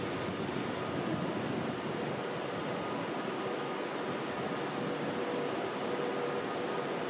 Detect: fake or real real